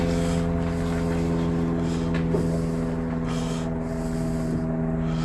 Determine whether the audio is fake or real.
real